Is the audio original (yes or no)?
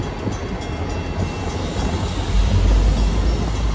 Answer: yes